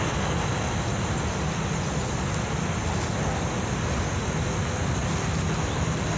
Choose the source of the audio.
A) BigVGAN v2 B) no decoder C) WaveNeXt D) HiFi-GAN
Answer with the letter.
B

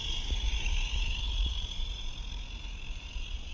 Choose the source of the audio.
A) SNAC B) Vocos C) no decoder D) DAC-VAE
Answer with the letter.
B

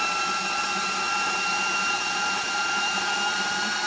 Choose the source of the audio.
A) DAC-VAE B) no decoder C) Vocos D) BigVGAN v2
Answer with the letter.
B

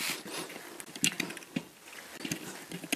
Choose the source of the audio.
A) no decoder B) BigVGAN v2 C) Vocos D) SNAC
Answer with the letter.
A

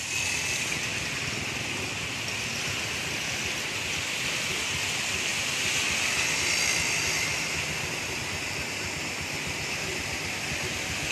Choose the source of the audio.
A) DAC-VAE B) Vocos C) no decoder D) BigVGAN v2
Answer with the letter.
C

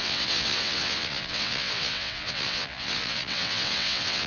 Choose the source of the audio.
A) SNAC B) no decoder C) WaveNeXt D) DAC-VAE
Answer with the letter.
C